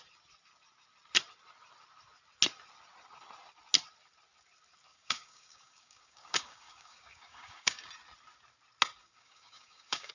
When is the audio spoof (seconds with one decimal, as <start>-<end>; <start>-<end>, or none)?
4.9-7.9; 9.0-10.1